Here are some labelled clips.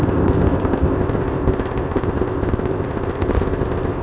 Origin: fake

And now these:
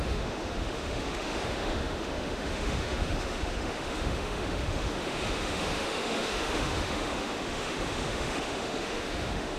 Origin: fake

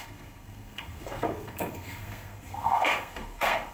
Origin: fake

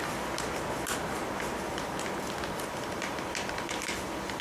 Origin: real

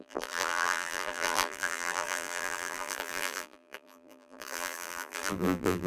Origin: fake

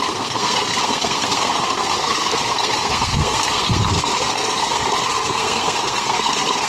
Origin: fake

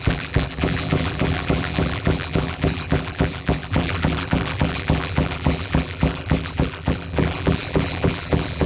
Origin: fake